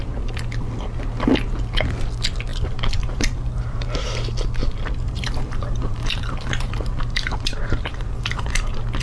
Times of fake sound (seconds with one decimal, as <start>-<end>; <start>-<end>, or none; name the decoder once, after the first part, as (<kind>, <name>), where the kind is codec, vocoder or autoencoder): 2.5-4.0 (vocoder, BigVGAN v2); 4.6-8.5